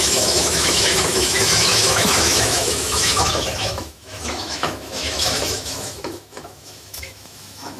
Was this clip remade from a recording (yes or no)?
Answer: yes